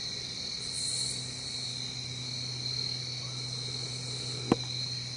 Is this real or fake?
real